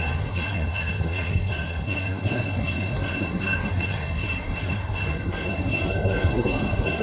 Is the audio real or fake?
fake